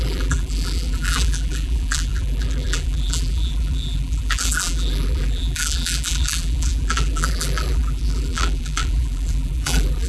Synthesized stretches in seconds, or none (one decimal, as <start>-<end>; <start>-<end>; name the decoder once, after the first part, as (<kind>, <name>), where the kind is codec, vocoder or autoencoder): 0.0-10.1 (vocoder, BigVGAN v2)